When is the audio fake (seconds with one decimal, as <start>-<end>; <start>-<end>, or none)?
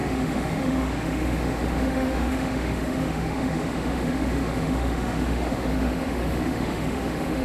0.0-7.4